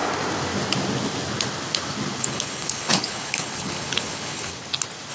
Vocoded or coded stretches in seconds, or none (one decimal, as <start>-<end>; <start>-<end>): 2.2-4.5